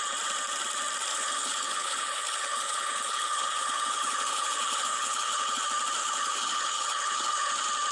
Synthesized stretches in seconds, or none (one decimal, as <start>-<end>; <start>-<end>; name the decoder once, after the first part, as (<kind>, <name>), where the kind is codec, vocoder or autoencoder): 1.1-5.6 (codec, HILCodec); 6.0-7.5

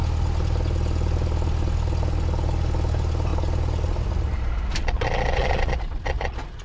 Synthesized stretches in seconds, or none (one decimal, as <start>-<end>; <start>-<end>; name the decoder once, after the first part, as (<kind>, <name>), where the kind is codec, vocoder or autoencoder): 4.8-6.6 (vocoder, Vocos)

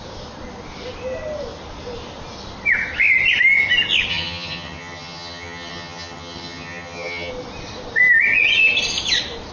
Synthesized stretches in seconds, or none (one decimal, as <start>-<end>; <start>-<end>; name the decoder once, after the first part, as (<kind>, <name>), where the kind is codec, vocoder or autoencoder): 4.1-7.3 (vocoder, HiFi-GAN)

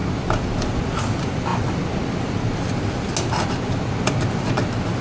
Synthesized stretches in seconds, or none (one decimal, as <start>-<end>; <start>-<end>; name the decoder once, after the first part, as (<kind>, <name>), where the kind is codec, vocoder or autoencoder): none